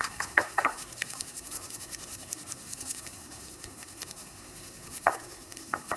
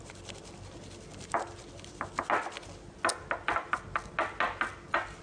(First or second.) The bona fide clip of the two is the second